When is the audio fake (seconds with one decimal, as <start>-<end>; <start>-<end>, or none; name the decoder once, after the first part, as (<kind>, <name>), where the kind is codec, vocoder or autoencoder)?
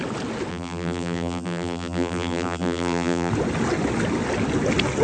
0.5-3.3 (vocoder, BigVGAN v2)